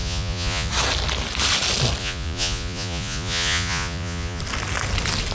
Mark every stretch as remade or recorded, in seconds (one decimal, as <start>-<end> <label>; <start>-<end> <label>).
0.0-0.7 remade; 0.7-2.0 recorded; 2.0-4.4 remade; 4.4-5.3 recorded